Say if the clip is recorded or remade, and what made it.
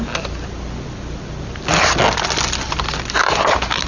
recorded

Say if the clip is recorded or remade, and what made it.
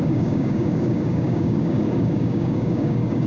remade, codec, DAC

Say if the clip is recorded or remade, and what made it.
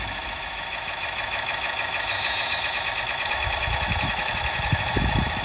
remade, autoencoder, DAC-VAE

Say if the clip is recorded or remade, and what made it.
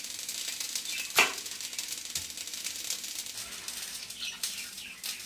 recorded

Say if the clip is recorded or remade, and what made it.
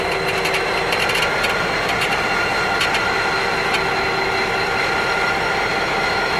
recorded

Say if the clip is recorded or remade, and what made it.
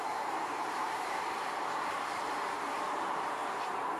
remade, vocoder, BigVGAN v2